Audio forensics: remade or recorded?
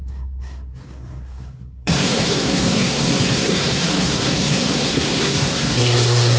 remade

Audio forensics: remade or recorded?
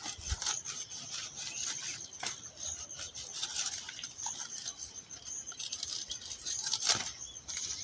recorded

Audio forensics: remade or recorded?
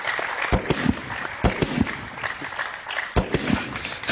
recorded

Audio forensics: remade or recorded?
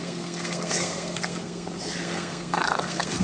remade